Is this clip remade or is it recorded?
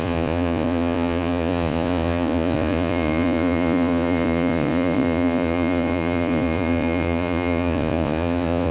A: remade